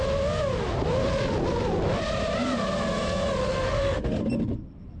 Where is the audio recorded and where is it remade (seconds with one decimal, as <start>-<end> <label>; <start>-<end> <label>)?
0.0-3.4 recorded; 3.4-4.2 remade; 4.2-5.0 recorded